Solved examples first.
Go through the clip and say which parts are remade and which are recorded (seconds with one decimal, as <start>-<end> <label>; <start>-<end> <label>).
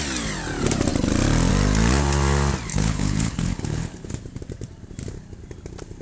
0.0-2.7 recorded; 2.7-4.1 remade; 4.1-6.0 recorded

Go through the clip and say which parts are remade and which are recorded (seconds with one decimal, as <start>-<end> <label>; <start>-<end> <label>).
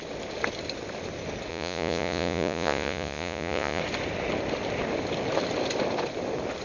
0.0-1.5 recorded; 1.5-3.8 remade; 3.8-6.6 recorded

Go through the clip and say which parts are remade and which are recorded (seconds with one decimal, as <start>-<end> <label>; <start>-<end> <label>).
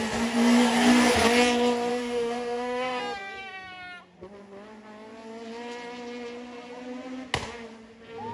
0.0-1.9 recorded; 1.9-3.0 remade; 3.0-8.3 recorded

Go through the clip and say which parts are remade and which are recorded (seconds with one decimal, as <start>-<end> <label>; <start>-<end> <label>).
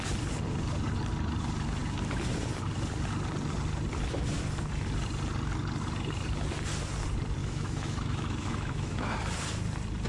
0.0-7.4 recorded; 7.4-9.2 remade; 9.2-10.1 recorded